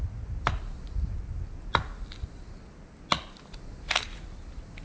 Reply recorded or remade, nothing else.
recorded